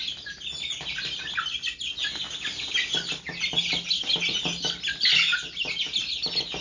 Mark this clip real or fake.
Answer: real